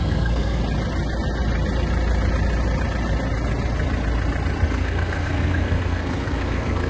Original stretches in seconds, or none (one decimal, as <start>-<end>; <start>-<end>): 0.6-4.7